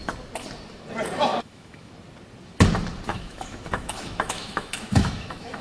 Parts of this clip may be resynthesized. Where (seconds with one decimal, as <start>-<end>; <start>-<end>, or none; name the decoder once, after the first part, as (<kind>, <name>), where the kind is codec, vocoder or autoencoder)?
1.3-1.9 (autoencoder, DAC-VAE); 3.1-5.6